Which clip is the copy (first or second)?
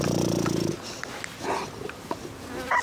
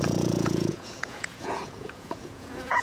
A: second